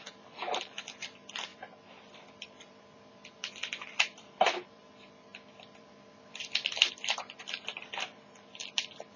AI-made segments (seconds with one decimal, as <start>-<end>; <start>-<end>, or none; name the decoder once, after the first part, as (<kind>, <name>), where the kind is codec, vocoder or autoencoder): 0.0-9.2 (vocoder, BigVGAN v2)